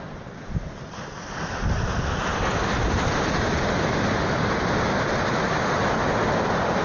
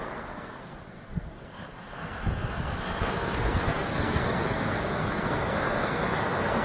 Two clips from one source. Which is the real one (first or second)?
first